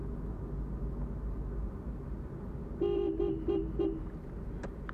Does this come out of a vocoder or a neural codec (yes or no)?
no